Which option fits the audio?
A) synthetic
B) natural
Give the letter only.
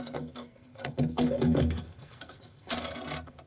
A